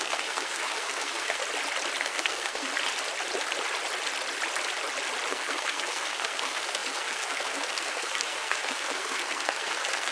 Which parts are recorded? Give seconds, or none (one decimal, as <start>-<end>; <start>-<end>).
1.4-2.0; 2.7-5.3